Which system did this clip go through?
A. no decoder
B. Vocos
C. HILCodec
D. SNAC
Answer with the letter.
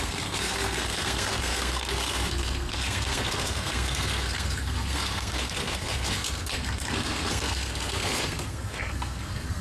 D